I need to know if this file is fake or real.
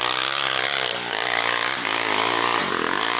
real